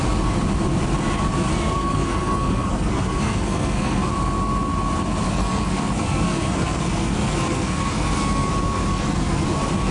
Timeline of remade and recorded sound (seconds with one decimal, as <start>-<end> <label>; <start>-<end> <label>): 0.0-1.5 recorded; 1.5-4.1 remade; 4.1-5.3 recorded; 5.3-8.5 remade; 8.5-8.9 recorded; 8.9-9.4 remade; 9.4-9.9 recorded